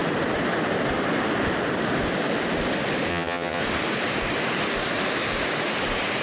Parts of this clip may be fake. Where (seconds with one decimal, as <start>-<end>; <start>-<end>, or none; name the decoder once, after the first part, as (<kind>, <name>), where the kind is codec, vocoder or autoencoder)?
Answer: 3.1-3.6 (vocoder, HiFi-GAN)

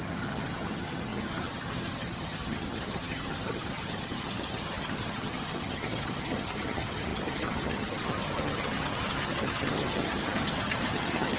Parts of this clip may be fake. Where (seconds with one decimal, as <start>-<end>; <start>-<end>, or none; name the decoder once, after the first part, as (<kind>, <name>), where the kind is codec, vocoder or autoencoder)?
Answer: 0.0-11.4 (vocoder, HiFi-GAN)

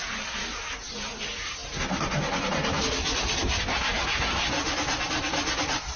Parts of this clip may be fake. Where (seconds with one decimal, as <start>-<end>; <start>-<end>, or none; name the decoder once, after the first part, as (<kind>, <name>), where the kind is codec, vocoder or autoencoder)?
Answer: none

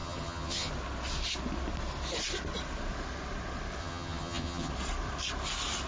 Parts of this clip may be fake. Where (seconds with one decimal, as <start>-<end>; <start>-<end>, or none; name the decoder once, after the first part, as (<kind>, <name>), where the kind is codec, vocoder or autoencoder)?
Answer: 0.0-0.7 (vocoder, HiFi-GAN); 3.8-4.7

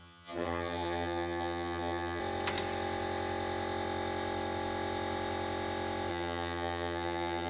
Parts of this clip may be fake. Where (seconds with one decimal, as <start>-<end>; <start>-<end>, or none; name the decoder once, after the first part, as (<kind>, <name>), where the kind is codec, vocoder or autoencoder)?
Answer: 0.0-2.2 (vocoder, HiFi-GAN); 6.1-7.5

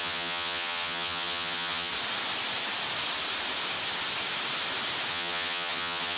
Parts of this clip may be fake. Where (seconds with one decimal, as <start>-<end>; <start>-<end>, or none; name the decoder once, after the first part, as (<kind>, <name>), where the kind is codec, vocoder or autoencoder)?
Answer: 0.0-1.9 (vocoder, HiFi-GAN); 5.1-6.2

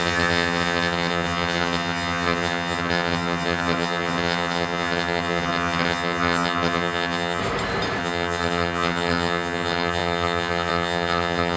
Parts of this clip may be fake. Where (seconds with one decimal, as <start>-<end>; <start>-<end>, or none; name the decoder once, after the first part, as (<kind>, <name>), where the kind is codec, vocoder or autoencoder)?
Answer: 0.0-7.4 (vocoder, HiFi-GAN); 8.0-11.6